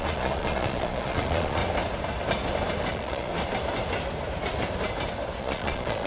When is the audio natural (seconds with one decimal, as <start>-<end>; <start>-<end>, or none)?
1.6-2.9; 3.3-5.4